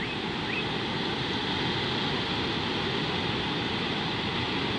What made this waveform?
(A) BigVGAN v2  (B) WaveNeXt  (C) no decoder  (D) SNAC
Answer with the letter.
C